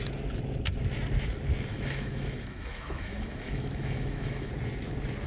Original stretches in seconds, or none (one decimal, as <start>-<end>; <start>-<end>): 0.0-1.7; 4.5-5.3